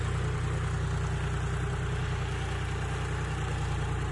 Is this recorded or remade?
recorded